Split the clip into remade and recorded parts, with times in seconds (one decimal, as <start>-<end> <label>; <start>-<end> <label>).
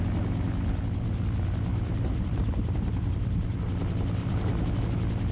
0.0-1.7 recorded; 1.7-3.6 remade; 3.6-4.2 recorded; 4.2-4.8 remade; 4.8-5.3 recorded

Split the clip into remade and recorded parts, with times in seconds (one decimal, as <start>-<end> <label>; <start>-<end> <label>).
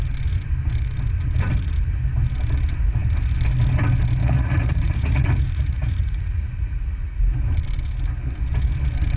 0.0-4.2 recorded; 4.2-7.2 remade; 7.2-9.2 recorded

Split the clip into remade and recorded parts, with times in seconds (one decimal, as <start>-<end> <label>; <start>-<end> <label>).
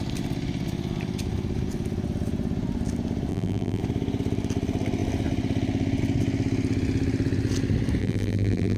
0.0-3.3 recorded; 3.3-3.8 remade; 3.8-8.0 recorded; 8.0-8.8 remade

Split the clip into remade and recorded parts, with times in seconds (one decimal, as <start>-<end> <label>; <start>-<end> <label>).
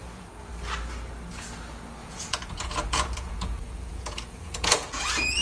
0.0-0.5 remade; 0.5-2.0 recorded; 2.0-5.4 remade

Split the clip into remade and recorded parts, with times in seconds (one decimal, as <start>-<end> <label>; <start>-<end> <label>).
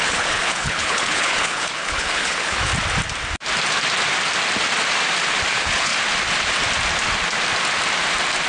0.0-2.7 remade; 2.7-5.5 recorded; 5.5-5.9 remade; 5.9-8.5 recorded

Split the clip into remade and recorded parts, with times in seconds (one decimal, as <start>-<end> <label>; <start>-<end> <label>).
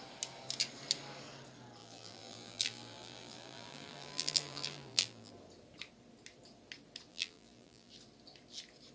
0.0-1.8 recorded; 1.8-5.3 remade; 5.3-7.1 recorded; 7.1-7.9 remade; 7.9-8.9 recorded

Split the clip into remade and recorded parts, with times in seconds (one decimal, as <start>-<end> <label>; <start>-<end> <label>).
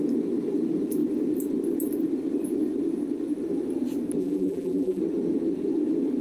0.0-4.2 recorded; 4.2-5.0 remade; 5.0-6.2 recorded